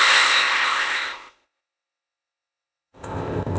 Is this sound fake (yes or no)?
yes